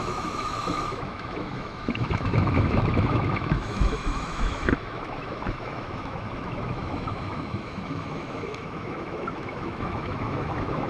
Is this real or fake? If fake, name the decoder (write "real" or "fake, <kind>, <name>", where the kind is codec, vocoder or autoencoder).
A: fake, autoencoder, DAC-VAE